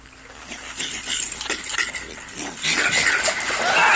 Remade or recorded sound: recorded